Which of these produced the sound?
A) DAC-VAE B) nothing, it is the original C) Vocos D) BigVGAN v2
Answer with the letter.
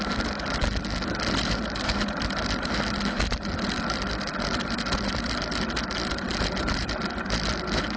B